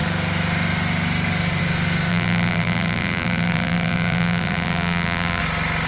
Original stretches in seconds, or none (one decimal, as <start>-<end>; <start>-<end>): 0.0-2.1; 5.4-5.9